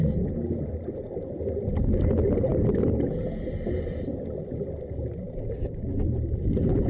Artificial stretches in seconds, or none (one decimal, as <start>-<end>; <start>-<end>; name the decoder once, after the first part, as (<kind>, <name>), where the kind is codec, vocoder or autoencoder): none